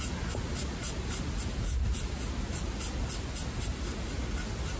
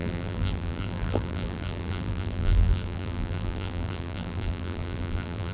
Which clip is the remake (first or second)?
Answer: second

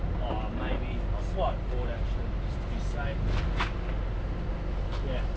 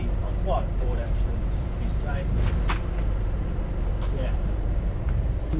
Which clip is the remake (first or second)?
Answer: second